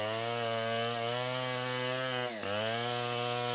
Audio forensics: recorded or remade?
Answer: recorded